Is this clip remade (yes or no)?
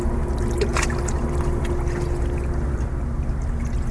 no